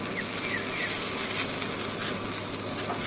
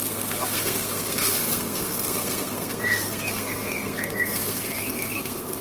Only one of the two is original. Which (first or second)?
first